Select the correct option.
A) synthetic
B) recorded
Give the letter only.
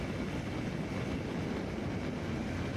B